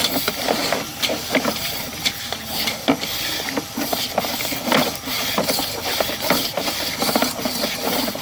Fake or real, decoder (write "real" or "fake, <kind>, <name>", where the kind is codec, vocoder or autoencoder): real